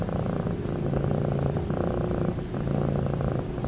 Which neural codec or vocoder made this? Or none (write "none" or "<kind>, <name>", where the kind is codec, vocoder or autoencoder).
none